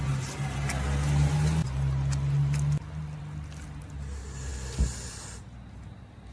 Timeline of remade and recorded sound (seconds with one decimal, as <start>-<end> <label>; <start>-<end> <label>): 0.0-6.3 recorded